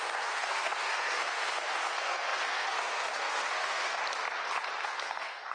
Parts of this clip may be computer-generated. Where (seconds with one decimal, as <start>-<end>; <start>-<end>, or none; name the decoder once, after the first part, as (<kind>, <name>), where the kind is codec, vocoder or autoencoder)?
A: 0.0-4.0 (codec, SNAC); 4.8-5.5